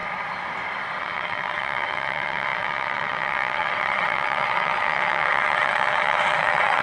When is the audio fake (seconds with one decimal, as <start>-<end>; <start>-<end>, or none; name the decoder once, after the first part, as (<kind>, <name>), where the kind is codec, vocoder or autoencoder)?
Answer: 1.0-6.8 (vocoder, WaveNeXt)